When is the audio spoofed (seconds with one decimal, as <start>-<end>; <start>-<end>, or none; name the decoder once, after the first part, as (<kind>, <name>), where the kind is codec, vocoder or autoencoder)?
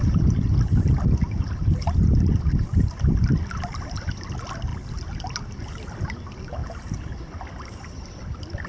none